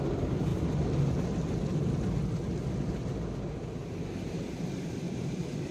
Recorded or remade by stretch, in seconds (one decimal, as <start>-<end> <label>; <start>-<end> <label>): 0.0-5.7 recorded